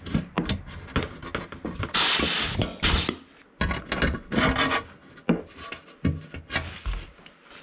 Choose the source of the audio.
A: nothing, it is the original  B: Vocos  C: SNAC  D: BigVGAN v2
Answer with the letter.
A